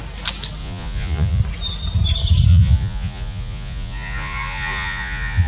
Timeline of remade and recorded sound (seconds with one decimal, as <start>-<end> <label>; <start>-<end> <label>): 0.0-0.6 recorded; 0.6-1.4 remade; 1.4-2.5 recorded; 2.5-5.5 remade

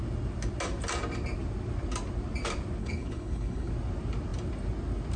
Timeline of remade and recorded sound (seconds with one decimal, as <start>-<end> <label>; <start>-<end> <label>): 0.0-2.8 recorded; 2.8-3.7 remade; 3.7-5.2 recorded

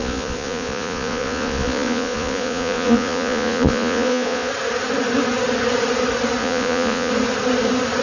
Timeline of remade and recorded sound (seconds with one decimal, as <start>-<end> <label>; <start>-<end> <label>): 0.0-4.5 remade; 4.5-6.4 recorded; 6.4-7.1 remade; 7.1-8.0 recorded